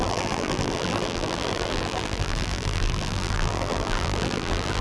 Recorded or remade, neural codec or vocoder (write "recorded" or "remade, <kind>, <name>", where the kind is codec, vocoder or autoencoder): remade, vocoder, BigVGAN v2